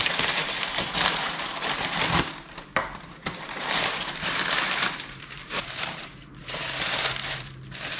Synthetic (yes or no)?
yes